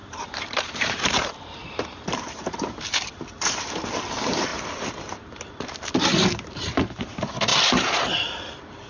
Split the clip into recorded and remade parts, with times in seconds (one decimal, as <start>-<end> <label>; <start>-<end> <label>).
0.0-4.5 remade; 4.5-5.2 recorded; 5.2-8.9 remade